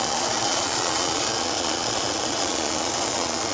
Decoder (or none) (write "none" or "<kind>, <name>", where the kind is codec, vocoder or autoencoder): vocoder, Vocos